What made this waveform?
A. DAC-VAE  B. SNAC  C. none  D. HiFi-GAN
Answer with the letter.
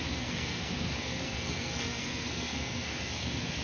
B